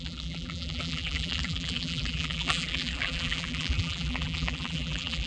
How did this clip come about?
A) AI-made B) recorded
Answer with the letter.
A